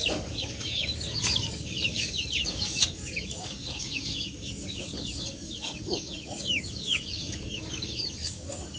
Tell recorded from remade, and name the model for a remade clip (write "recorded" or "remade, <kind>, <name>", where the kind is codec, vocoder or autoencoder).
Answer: remade, codec, DAC